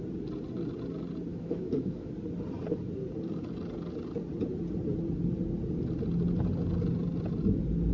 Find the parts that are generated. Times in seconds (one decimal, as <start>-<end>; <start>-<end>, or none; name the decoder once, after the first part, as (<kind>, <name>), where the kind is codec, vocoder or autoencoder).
1.3-2.1 (autoencoder, DAC-VAE)